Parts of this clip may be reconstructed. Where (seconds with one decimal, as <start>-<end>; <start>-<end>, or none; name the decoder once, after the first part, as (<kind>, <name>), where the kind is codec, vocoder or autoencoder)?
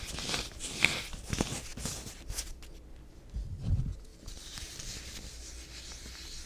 4.1-5.0 (vocoder, BigVGAN v2)